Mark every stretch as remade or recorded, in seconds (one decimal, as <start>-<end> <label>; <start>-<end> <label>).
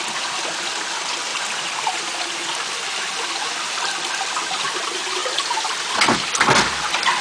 0.0-1.3 remade; 1.3-3.5 recorded; 3.5-7.2 remade